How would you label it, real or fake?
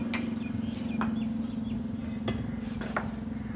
real